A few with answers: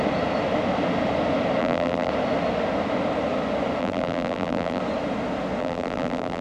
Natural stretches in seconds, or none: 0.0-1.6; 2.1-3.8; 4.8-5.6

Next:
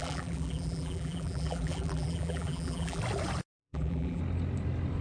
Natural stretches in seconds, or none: 3.0-3.6; 4.2-5.0